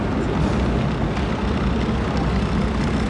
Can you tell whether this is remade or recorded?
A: recorded